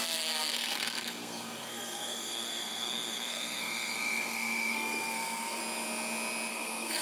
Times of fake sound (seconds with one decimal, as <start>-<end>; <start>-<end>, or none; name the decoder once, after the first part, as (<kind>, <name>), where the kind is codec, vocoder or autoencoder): 0.0-5.6 (codec, SNAC); 6.5-7.0